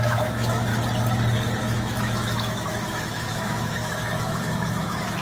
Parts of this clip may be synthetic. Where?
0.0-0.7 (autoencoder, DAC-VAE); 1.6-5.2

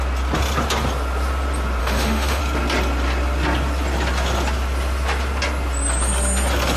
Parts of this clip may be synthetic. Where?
1.8-2.4 (autoencoder, DAC-VAE)

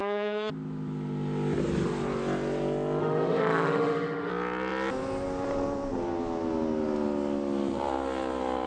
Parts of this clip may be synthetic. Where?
0.0-0.5 (autoencoder, DAC-VAE); 3.0-4.3

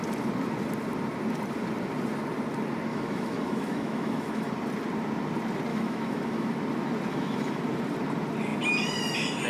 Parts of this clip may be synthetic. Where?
2.9-4.5 (autoencoder, DAC-VAE); 5.7-6.5; 7.1-7.6

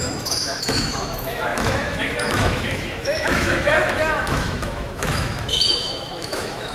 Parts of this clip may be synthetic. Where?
0.0-6.7 (autoencoder, DAC-VAE)